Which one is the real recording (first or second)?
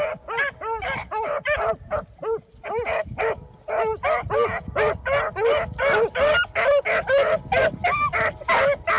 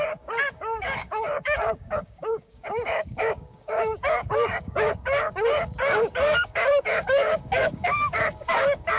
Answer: first